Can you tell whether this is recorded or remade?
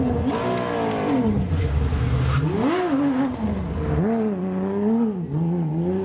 recorded